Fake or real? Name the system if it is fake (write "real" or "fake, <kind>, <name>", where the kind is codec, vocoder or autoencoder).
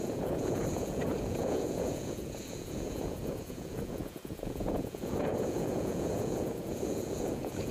fake, vocoder, Vocos